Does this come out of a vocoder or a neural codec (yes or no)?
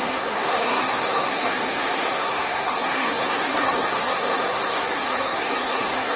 yes